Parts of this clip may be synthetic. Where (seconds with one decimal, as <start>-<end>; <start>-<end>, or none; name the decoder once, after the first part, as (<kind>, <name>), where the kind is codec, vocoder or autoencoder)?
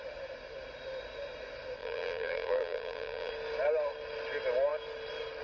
1.8-3.3 (vocoder, BigVGAN v2)